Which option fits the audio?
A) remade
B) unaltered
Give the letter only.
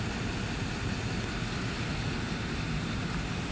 B